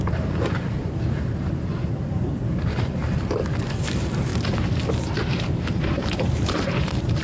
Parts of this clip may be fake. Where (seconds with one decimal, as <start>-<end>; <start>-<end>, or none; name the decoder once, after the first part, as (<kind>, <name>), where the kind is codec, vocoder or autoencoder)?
0.0-3.0 (vocoder, BigVGAN v2); 3.6-4.3; 4.9-7.2